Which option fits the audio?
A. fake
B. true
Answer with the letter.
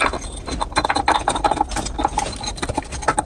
B